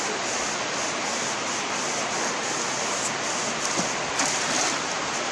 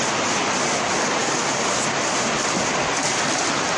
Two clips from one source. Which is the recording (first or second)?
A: first